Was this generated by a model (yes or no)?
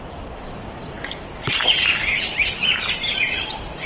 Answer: no